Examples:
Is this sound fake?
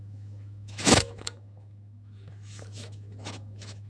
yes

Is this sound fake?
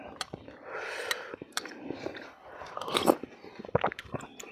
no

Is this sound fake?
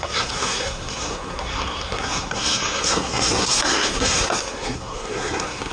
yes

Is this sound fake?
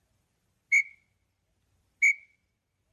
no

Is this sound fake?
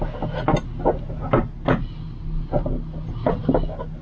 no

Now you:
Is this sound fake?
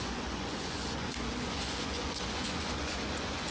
yes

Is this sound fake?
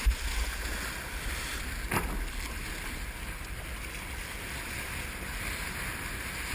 no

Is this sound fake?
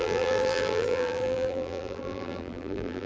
yes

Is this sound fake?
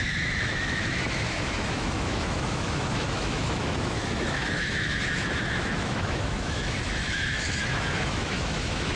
yes